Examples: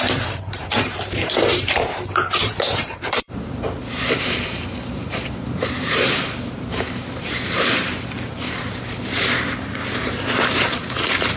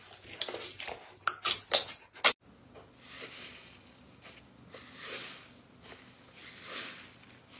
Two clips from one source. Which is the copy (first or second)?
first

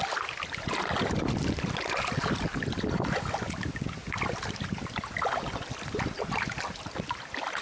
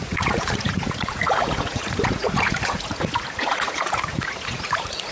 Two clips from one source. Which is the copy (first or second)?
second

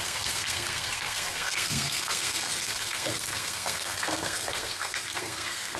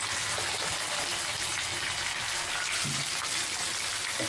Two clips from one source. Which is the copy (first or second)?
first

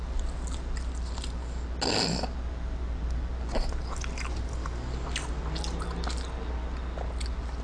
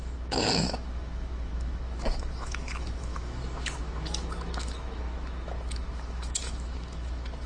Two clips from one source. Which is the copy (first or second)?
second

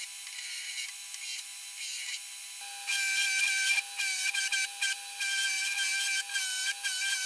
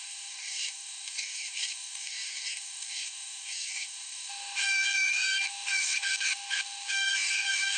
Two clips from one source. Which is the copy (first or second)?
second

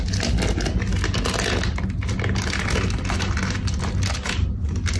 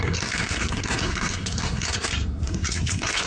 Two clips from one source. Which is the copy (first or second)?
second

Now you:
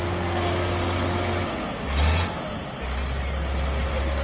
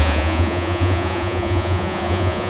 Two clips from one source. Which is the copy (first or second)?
second